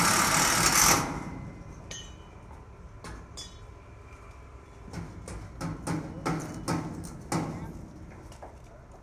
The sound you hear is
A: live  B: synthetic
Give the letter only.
A